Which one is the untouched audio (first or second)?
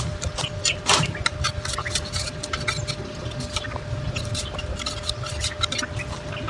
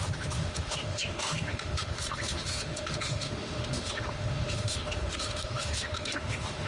first